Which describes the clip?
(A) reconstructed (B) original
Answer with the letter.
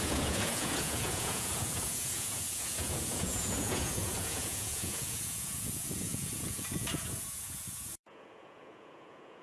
A